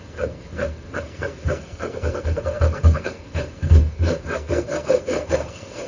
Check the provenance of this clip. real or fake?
fake